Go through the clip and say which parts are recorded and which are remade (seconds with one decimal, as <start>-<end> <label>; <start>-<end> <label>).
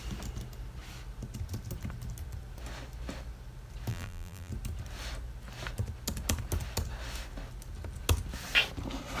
0.0-3.9 recorded; 3.9-4.5 remade; 4.5-9.2 recorded